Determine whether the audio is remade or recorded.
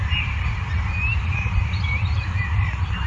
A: recorded